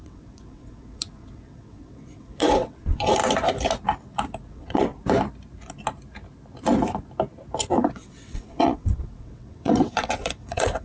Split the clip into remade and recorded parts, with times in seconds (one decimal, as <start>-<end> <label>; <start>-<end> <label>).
0.0-3.2 remade; 3.2-4.5 recorded; 4.5-4.9 remade; 4.9-7.9 recorded; 7.9-10.8 remade